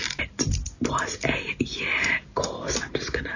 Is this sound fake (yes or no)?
yes